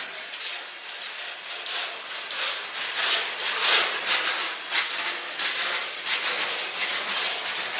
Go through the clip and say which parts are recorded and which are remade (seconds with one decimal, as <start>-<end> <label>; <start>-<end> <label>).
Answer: 0.0-7.8 recorded